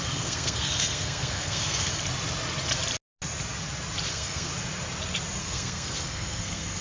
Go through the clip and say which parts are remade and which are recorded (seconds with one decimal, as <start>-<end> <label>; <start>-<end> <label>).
0.0-1.9 remade; 1.9-4.1 recorded; 4.1-4.5 remade; 4.5-5.4 recorded; 5.4-6.8 remade